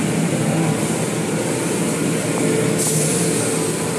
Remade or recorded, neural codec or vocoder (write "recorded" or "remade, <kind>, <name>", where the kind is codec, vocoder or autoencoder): recorded